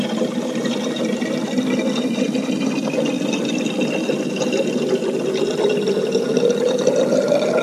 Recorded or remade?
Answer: recorded